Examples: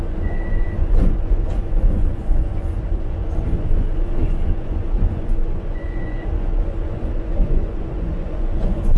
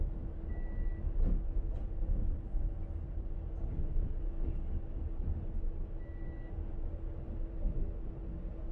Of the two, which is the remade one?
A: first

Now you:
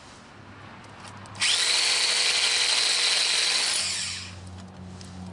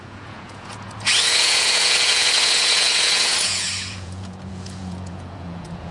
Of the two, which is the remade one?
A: second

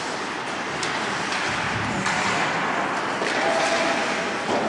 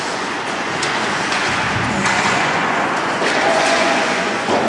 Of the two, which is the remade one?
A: second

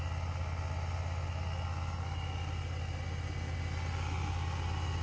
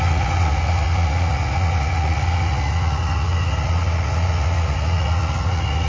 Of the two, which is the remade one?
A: second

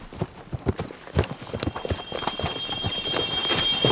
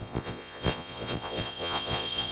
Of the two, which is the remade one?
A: second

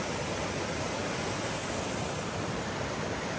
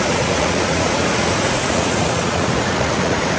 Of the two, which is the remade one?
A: second